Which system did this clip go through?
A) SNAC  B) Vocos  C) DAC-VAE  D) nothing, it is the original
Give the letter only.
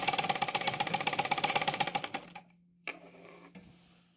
D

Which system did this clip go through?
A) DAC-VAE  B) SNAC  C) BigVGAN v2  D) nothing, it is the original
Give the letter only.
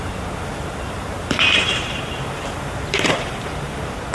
C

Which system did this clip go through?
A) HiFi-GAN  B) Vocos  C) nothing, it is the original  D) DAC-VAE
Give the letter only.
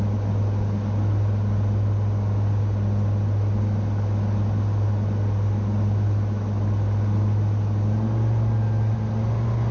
C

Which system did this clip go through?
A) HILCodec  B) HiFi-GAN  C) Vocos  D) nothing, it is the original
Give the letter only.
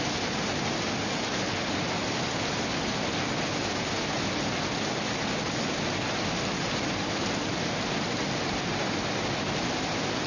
D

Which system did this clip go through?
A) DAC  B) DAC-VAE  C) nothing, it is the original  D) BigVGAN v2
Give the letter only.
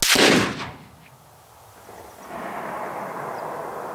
C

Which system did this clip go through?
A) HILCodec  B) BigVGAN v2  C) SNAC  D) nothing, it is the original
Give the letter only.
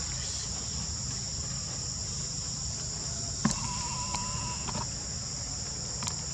D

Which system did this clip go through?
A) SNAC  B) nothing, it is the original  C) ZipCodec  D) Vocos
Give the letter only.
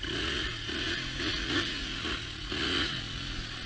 D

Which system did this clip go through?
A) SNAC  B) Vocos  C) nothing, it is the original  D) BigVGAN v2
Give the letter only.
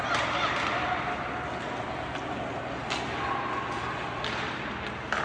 C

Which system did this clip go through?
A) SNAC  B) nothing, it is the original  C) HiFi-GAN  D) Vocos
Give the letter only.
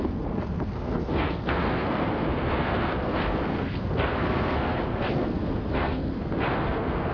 A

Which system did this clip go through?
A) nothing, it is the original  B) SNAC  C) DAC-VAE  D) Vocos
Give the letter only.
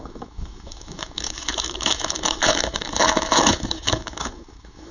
C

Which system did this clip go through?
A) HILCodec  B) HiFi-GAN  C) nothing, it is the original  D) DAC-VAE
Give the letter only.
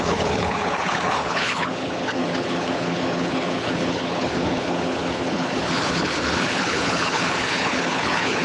A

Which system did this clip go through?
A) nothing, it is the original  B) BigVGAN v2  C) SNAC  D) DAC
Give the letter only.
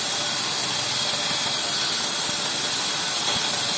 A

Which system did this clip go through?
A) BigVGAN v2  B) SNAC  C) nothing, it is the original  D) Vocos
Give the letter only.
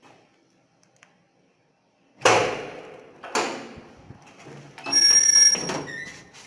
C